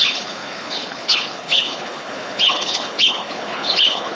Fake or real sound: fake